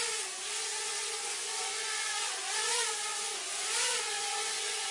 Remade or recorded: remade